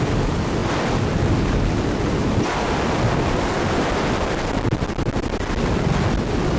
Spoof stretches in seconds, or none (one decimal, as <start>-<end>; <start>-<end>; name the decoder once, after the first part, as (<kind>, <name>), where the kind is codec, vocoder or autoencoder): none